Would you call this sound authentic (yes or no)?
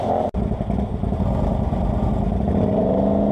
yes